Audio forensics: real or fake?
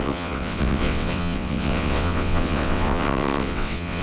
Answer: fake